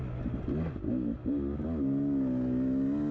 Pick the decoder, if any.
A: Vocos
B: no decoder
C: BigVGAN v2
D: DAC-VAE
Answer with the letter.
B